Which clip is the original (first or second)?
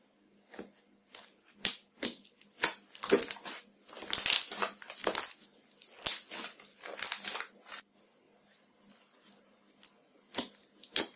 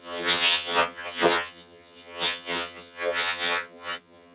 first